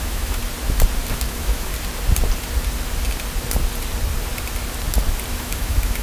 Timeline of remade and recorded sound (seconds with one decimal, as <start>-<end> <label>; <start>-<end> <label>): 0.0-0.4 remade; 0.4-1.1 recorded; 1.1-1.7 remade; 1.7-5.3 recorded; 5.3-6.0 remade